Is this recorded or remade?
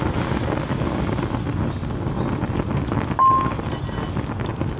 recorded